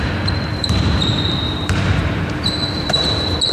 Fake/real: fake